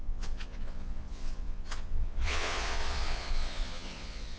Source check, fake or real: fake